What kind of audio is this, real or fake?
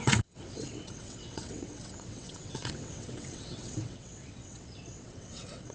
fake